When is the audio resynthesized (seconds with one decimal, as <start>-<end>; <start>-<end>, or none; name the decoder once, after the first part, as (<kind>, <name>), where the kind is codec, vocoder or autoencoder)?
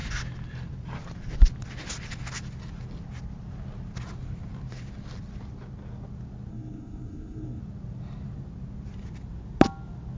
6.5-7.6 (codec, SNAC)